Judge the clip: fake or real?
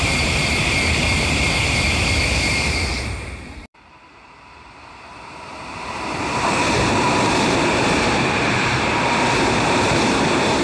fake